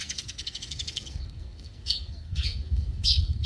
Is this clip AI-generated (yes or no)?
yes